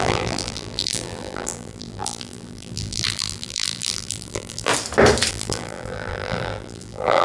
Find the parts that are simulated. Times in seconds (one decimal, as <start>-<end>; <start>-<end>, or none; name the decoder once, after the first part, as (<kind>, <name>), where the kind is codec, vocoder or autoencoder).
0.0-4.7 (vocoder, BigVGAN v2); 5.3-7.2